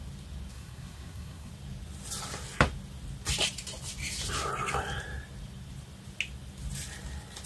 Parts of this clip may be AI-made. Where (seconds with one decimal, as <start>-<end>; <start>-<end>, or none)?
0.5-1.5